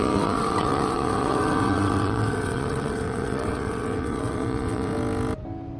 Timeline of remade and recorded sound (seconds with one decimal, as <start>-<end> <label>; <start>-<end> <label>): 0.0-4.9 remade; 4.9-5.8 recorded